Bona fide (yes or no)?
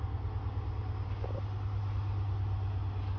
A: yes